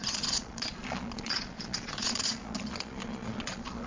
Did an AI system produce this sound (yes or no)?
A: yes